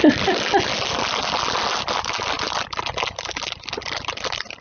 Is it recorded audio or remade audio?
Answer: recorded